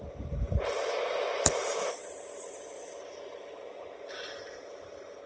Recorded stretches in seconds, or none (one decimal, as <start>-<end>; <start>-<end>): none

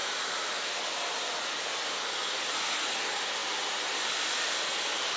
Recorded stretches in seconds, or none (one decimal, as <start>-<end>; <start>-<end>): 0.0-3.4; 4.6-5.2

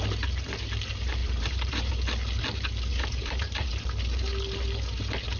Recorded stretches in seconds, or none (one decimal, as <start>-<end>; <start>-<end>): 0.0-1.2; 1.9-2.9; 3.7-5.4

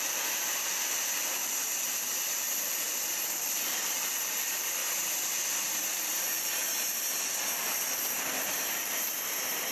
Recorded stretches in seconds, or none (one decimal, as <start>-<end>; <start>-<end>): 2.9-4.2; 4.8-5.4; 6.6-7.3

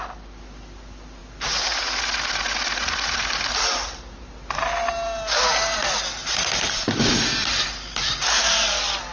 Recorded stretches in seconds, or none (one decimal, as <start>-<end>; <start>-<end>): 0.0-6.2; 7.1-9.1

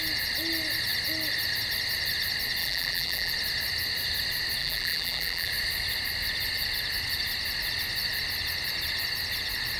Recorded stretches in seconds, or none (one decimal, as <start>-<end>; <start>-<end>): 0.0-2.6; 3.3-4.6; 5.5-9.8

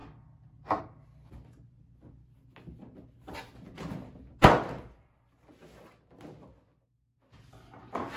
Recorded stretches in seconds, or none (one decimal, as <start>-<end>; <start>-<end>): 0.0-8.2